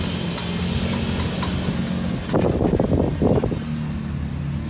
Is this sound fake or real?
real